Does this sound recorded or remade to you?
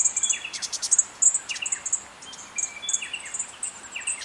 recorded